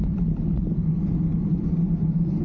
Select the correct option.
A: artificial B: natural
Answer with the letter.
B